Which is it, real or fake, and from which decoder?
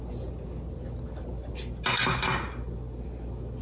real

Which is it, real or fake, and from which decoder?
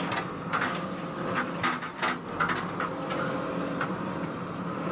real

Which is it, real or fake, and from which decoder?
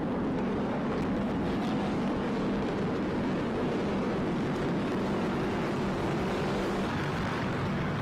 fake, codec, DAC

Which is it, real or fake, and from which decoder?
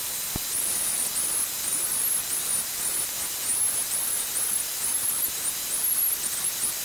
real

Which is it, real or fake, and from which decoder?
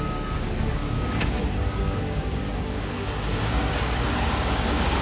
fake, codec, DAC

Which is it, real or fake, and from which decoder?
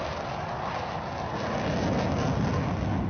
real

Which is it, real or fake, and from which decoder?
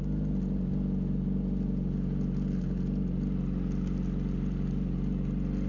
real